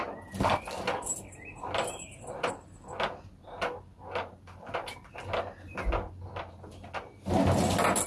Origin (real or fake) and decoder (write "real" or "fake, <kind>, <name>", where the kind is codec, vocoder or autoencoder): real